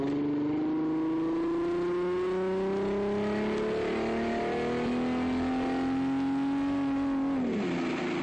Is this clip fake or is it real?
real